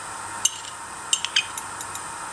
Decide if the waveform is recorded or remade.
recorded